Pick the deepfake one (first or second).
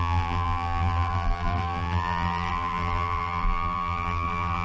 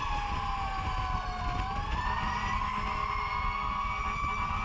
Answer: first